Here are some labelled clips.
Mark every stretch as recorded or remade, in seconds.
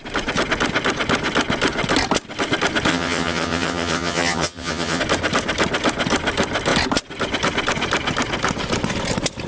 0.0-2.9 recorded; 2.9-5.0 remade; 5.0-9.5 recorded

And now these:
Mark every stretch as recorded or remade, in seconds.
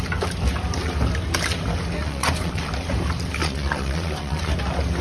0.0-2.0 recorded; 2.0-2.7 remade; 2.7-3.4 recorded; 3.4-4.5 remade; 4.5-5.0 recorded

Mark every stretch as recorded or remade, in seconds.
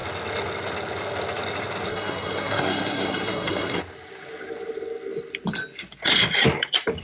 0.0-1.9 recorded; 1.9-3.8 remade; 3.8-7.0 recorded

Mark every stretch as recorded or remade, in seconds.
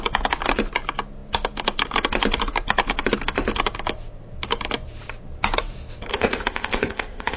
0.0-6.1 recorded; 6.1-7.4 remade